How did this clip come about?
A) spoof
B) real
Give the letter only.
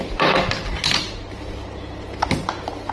B